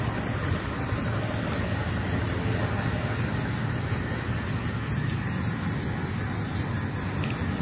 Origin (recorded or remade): recorded